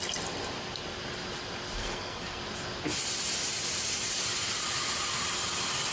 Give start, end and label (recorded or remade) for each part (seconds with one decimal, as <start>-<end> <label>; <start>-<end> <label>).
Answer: 0.0-1.8 recorded; 1.8-2.4 remade; 2.4-5.9 recorded